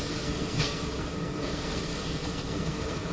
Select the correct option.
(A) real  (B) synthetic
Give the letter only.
B